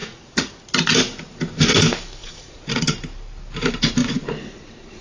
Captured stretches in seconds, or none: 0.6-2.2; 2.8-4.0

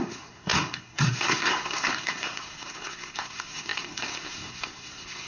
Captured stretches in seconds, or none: none

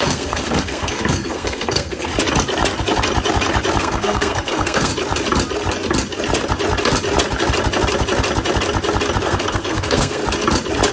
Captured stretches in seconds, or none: 2.1-3.8; 4.9-9.2; 10.2-10.9

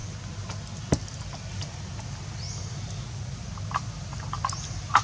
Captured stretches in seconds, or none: 0.0-5.0

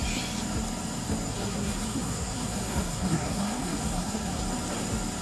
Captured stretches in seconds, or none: 0.0-1.3; 4.4-5.2

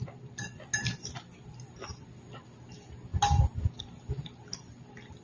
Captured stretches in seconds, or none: 0.0-5.2